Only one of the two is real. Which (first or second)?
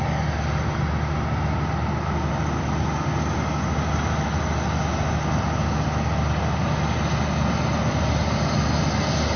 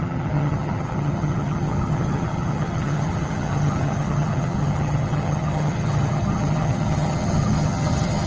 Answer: first